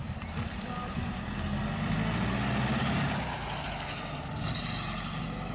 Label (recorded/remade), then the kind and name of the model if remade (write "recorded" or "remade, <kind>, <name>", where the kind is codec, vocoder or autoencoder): recorded